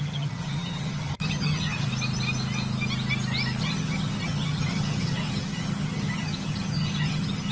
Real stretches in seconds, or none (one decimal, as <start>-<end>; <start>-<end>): 1.9-3.6